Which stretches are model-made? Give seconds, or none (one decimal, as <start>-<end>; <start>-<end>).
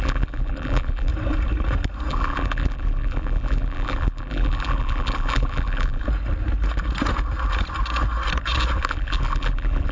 0.0-1.1; 2.1-6.0; 8.8-9.9